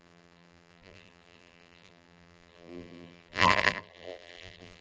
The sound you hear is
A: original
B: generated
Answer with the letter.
B